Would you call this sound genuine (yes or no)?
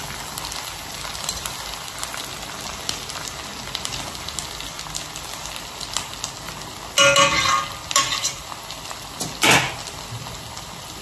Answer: yes